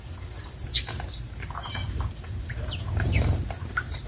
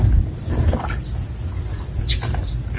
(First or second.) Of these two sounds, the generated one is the first